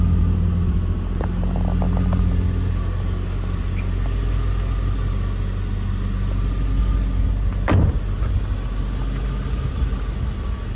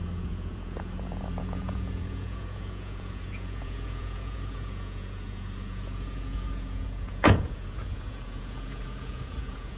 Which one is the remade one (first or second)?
second